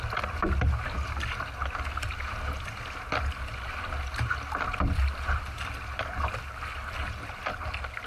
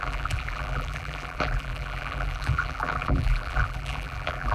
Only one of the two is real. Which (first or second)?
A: first